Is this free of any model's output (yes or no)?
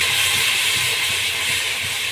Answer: no